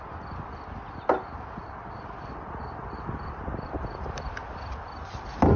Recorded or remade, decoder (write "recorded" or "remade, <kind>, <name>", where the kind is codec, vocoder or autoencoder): recorded